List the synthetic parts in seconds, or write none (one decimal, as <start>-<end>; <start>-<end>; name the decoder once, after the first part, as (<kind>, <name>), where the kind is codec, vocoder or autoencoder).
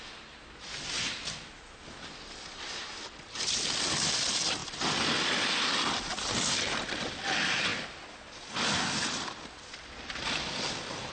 none